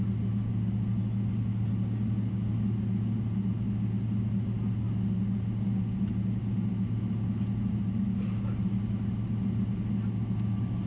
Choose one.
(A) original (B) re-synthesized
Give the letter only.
A